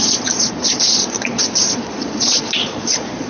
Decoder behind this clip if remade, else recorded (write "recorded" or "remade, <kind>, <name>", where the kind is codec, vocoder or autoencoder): remade, vocoder, Vocos